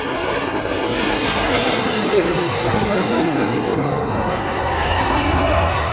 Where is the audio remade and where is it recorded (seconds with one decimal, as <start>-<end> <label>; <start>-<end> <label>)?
0.0-5.9 remade